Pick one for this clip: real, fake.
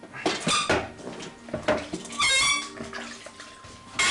real